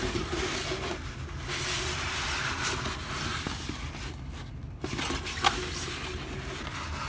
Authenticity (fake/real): real